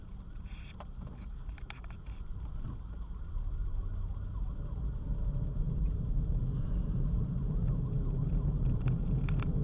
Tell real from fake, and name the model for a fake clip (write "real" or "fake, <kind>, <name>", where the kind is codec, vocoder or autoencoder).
fake, vocoder, BigVGAN v2